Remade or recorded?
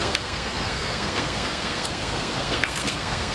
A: remade